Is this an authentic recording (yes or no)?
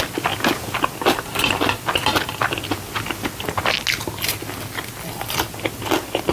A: yes